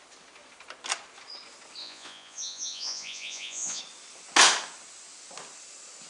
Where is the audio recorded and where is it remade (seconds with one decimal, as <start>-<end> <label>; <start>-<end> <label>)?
0.0-1.8 recorded; 1.8-3.8 remade; 3.8-6.1 recorded